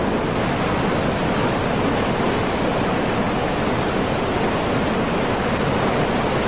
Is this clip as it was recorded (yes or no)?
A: yes